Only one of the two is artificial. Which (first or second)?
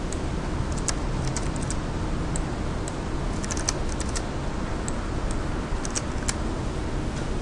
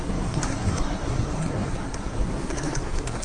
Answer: second